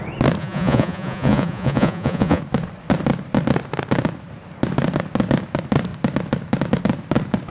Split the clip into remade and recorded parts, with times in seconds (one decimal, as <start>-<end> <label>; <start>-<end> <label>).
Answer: 0.0-0.4 recorded; 0.4-2.4 remade; 2.4-7.5 recorded